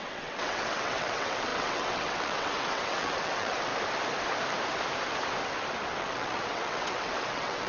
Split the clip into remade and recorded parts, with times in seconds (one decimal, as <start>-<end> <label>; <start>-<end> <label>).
0.0-3.7 remade; 3.7-6.0 recorded; 6.0-7.7 remade